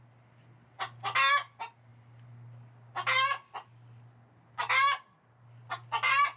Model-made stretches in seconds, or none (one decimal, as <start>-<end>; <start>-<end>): none